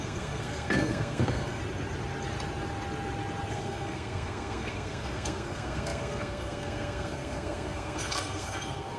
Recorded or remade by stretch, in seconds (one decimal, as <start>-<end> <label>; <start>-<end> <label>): 0.0-1.6 remade; 1.6-3.5 recorded; 3.5-9.0 remade